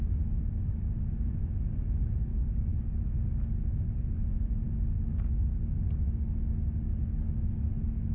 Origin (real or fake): real